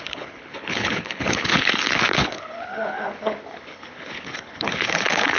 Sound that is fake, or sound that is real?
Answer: fake